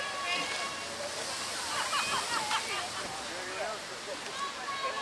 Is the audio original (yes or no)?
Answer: yes